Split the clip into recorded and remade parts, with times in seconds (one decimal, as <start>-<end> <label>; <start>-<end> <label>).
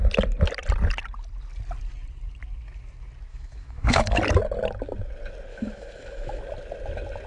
0.0-3.3 recorded; 3.3-4.2 remade; 4.2-5.5 recorded; 5.5-6.4 remade; 6.4-7.3 recorded